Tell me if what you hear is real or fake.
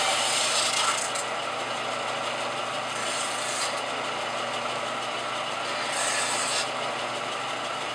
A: real